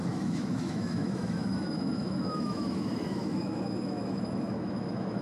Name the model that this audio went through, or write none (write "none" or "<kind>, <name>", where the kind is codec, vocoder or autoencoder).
autoencoder, DAC-VAE